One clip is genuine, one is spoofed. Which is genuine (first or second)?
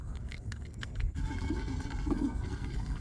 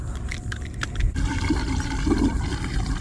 second